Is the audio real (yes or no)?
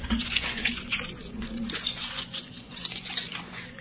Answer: no